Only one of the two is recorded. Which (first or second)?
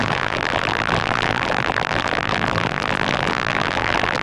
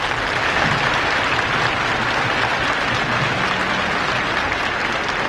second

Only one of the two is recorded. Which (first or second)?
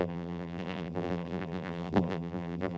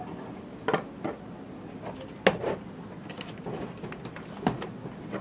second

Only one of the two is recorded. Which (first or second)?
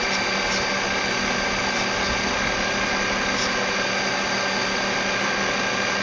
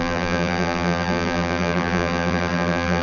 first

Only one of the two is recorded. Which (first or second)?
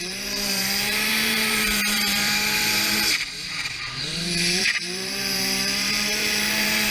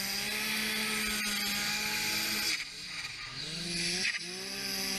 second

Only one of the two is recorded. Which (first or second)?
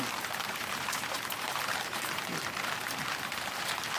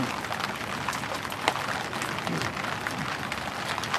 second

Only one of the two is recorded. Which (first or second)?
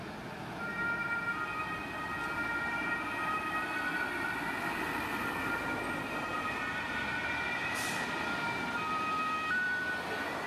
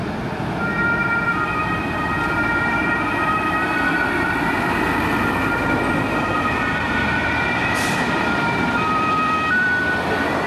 first